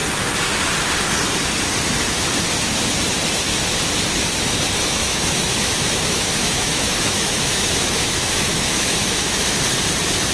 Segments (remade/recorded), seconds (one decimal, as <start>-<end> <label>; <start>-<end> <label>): 0.0-4.9 recorded; 4.9-9.6 remade; 9.6-10.3 recorded